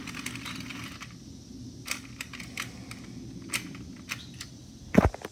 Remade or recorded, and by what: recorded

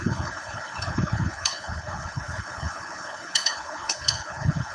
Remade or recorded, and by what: remade, codec, HILCodec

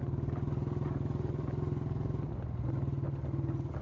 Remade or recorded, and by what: recorded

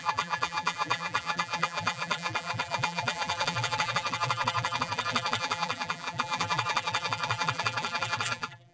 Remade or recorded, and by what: remade, vocoder, BigVGAN v2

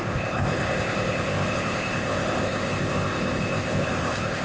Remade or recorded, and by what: remade, codec, ZipCodec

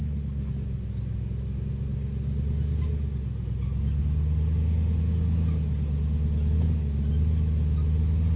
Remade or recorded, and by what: recorded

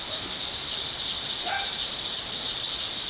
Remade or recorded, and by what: remade, vocoder, BigVGAN v2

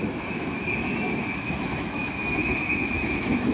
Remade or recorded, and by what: remade, autoencoder, DAC-VAE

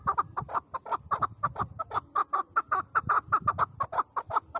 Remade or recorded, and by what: recorded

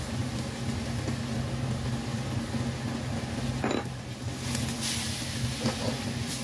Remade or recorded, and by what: recorded